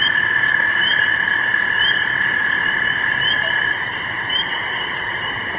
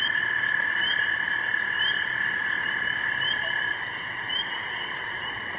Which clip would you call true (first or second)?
second